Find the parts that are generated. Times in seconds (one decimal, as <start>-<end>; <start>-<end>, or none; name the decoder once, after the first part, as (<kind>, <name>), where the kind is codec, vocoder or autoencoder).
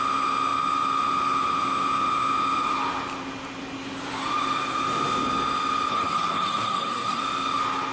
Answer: 5.9-7.2 (codec, SNAC)